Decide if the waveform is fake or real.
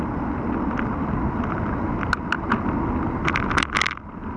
real